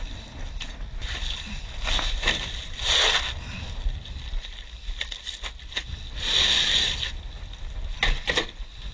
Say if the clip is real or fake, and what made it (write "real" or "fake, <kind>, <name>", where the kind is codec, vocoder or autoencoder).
real